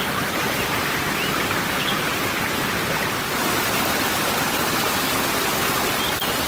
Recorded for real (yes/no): yes